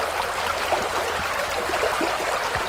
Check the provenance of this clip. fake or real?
real